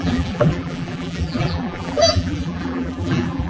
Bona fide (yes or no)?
no